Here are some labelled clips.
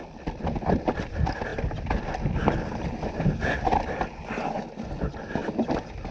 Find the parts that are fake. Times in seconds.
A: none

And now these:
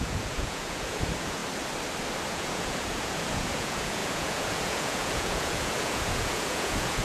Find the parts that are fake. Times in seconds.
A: 0.0-1.4 (vocoder, Vocos); 2.3-7.0